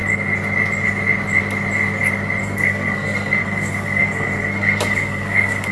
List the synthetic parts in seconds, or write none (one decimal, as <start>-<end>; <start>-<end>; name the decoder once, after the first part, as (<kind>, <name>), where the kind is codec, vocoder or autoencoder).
2.4-5.7 (codec, SNAC)